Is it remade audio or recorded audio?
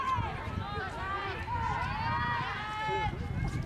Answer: recorded